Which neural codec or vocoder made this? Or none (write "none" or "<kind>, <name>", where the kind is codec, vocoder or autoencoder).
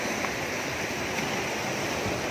none